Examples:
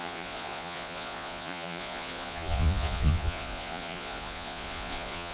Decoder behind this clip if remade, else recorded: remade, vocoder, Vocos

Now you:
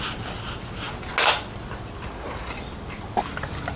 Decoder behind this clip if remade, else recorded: recorded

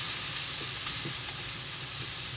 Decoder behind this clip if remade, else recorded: recorded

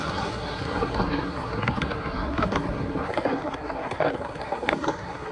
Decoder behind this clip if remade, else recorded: remade, codec, SNAC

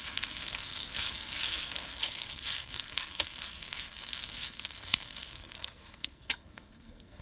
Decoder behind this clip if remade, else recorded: remade, codec, SNAC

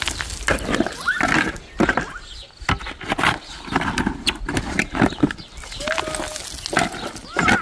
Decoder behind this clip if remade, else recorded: recorded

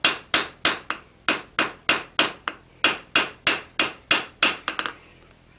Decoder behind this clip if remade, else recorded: recorded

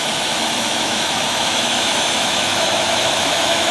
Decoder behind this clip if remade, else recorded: remade, autoencoder, DAC-VAE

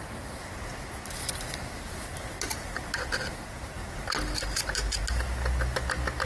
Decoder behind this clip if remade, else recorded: recorded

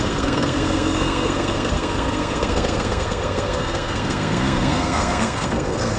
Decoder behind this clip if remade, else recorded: remade, codec, SNAC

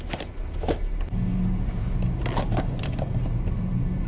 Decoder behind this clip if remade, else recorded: recorded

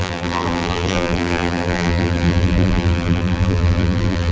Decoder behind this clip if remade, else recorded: remade, vocoder, BigVGAN v2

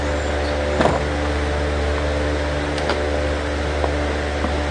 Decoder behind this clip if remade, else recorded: recorded